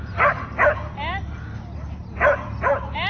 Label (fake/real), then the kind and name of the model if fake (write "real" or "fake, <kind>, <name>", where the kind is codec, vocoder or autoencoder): real